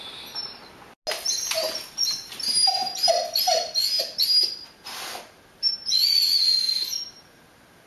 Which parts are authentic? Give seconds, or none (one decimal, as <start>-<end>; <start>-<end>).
0.0-7.9

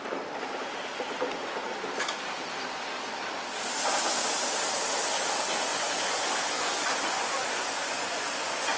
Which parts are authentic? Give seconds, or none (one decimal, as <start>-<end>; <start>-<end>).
0.0-5.7